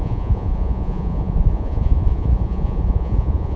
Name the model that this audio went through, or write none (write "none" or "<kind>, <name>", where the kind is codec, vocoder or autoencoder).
vocoder, Vocos